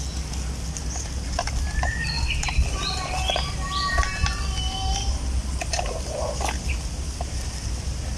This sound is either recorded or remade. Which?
recorded